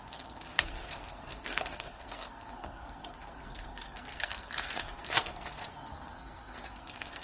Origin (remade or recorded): remade